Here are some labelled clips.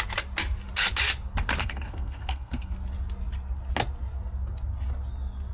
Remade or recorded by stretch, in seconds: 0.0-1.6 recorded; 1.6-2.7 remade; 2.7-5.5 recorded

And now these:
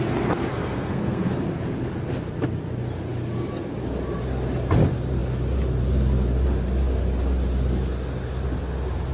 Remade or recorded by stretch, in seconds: 0.0-0.5 recorded; 0.5-1.4 remade; 1.4-9.1 recorded

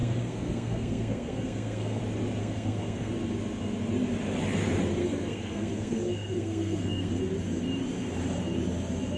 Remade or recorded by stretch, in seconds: 0.0-2.0 remade; 2.0-2.4 recorded; 2.4-3.1 remade; 3.1-5.0 recorded; 5.0-7.2 remade; 7.2-9.2 recorded

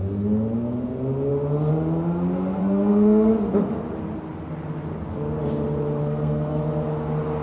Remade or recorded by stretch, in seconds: 0.0-2.6 recorded; 2.6-3.3 remade; 3.3-6.0 recorded; 6.0-6.6 remade; 6.6-7.4 recorded

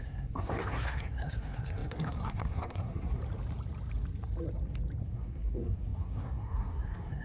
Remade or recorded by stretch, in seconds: 0.0-3.2 remade; 3.2-5.0 recorded; 5.0-7.2 remade

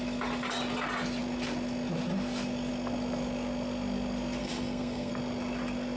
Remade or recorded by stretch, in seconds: 0.0-4.4 recorded; 4.4-5.1 remade; 5.1-6.0 recorded

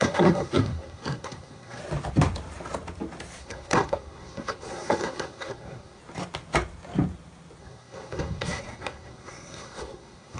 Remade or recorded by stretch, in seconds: 0.0-1.8 remade; 1.8-3.4 recorded; 3.4-6.0 remade; 6.0-7.6 recorded; 7.6-10.4 remade

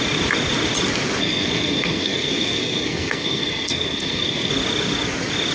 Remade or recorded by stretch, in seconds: 0.0-1.2 recorded; 1.2-4.5 remade; 4.5-5.5 recorded